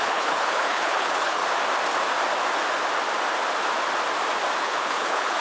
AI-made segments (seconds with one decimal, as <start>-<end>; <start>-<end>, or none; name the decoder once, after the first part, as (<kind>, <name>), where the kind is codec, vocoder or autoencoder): 0.0-1.4 (codec, HILCodec); 4.6-5.4